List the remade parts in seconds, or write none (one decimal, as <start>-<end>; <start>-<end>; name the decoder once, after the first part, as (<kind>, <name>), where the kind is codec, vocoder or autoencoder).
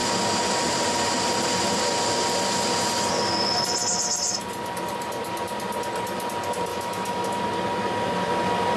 6.7-7.4 (autoencoder, DAC-VAE)